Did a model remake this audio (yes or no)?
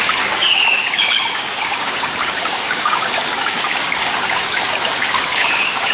yes